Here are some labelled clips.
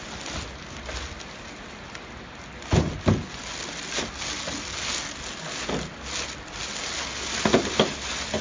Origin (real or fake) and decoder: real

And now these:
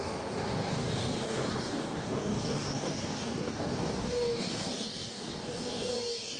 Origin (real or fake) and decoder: fake, codec, DAC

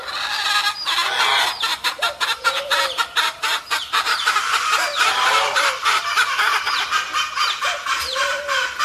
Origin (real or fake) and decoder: real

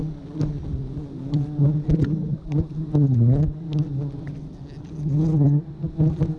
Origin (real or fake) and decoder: real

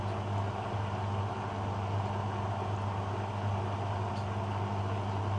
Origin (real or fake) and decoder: real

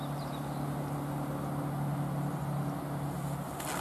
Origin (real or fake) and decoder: real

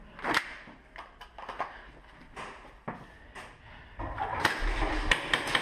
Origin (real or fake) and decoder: real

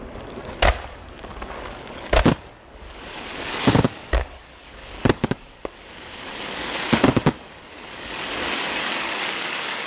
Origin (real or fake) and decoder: fake, codec, DAC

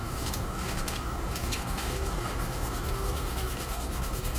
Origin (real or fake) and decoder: fake, codec, DAC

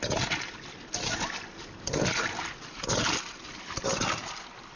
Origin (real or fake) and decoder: real